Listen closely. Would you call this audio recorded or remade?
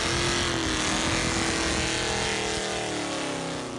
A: recorded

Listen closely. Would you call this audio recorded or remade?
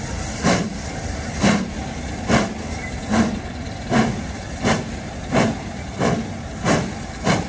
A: recorded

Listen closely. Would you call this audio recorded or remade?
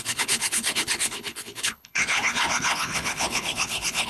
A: remade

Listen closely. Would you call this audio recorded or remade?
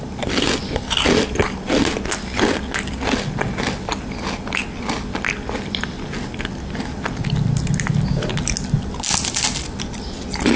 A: recorded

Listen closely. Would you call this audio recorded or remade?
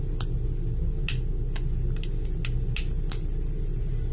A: recorded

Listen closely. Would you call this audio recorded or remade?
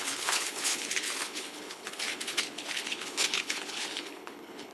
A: remade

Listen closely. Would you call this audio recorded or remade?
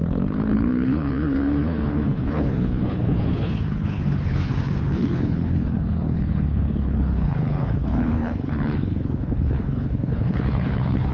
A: remade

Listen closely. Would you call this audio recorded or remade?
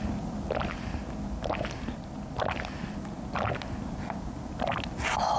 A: recorded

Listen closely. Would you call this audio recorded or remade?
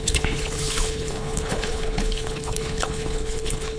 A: remade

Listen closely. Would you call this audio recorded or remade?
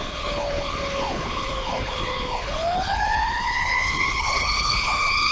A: remade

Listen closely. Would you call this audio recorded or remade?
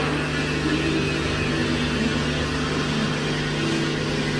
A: recorded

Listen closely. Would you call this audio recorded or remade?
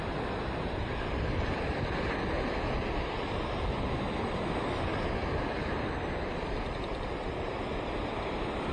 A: recorded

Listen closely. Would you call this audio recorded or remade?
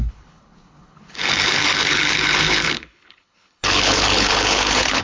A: remade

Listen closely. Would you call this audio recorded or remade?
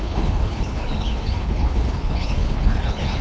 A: remade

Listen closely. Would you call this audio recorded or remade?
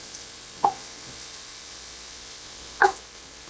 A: recorded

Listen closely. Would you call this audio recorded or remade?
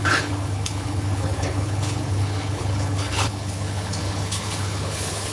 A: remade